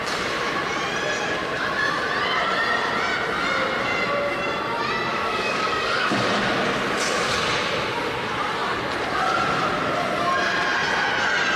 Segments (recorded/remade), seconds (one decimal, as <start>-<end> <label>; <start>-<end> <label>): 0.0-5.1 recorded; 5.1-6.1 remade; 6.1-11.6 recorded

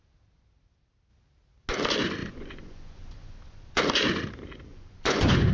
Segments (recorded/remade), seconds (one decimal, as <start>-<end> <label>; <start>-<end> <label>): 0.0-2.2 recorded; 2.2-3.8 remade; 3.8-4.7 recorded; 4.7-5.5 remade

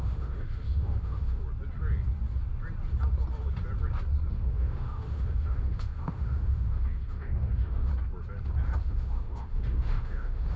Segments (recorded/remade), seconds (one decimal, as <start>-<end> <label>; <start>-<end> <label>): 0.0-1.4 remade; 1.4-4.3 recorded; 4.3-7.9 remade; 7.9-8.8 recorded; 8.8-10.6 remade

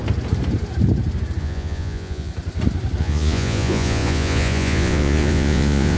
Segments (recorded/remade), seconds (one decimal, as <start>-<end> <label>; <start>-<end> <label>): 0.0-1.4 recorded; 1.4-2.3 remade; 2.3-3.0 recorded; 3.0-6.0 remade

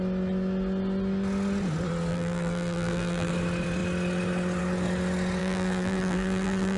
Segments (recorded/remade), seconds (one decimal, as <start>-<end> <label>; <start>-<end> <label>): 0.0-2.1 recorded; 2.1-3.3 remade; 3.3-5.4 recorded; 5.4-6.8 remade

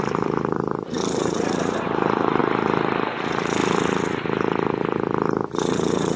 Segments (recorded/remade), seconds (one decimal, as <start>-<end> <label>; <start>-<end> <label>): 0.0-2.4 remade; 2.4-3.2 recorded; 3.2-3.6 remade; 3.6-5.6 recorded; 5.6-6.2 remade

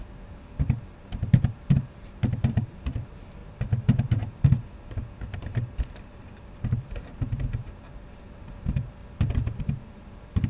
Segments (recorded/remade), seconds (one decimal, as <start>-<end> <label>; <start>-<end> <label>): 0.0-9.0 remade; 9.0-9.6 recorded; 9.6-10.5 remade